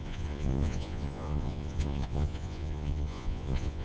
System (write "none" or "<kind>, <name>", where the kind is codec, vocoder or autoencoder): vocoder, Vocos